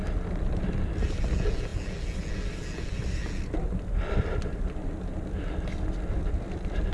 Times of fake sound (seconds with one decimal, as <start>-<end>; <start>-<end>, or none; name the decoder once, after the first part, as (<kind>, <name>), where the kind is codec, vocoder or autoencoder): none